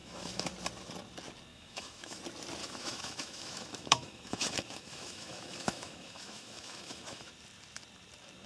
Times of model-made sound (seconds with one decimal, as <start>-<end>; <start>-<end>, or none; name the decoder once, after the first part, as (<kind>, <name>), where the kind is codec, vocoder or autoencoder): 0.0-0.5 (autoencoder, DAC-VAE); 1.5-2.2; 2.6-7.3